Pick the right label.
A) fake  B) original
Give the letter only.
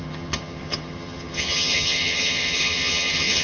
A